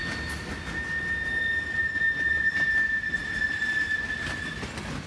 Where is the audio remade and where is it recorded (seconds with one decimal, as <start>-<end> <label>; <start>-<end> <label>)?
0.0-5.1 recorded